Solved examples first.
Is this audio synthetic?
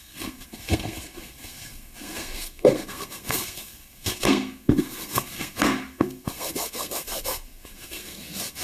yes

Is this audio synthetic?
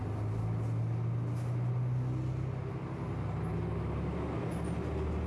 no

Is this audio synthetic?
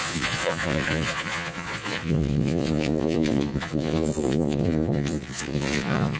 yes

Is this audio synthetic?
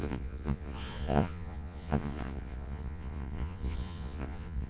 yes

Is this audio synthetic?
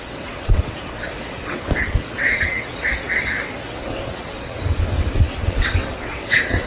yes